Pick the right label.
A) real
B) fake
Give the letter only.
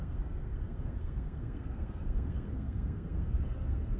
B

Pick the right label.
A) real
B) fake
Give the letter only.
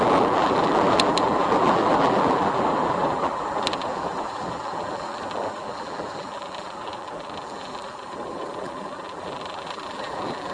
B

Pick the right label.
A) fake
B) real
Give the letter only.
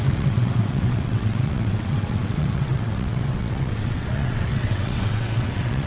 A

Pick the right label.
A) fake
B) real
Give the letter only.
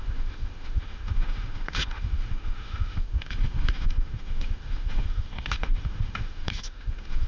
A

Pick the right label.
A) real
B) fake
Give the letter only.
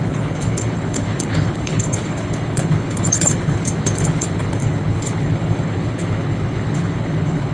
B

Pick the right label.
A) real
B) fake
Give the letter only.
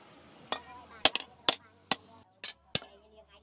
A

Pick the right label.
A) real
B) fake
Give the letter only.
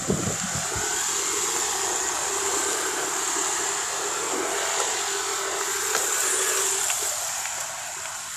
A